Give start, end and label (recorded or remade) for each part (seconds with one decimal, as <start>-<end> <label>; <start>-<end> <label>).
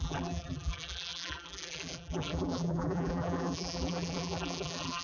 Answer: 0.0-5.0 remade